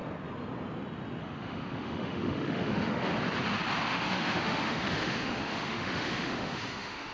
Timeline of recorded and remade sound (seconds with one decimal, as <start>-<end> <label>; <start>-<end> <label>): 0.0-1.2 recorded; 1.2-3.1 remade; 3.1-3.9 recorded; 3.9-7.1 remade